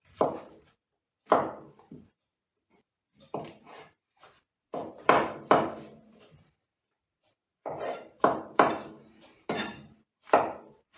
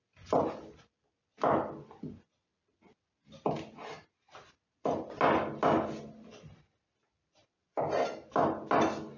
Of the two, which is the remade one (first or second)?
first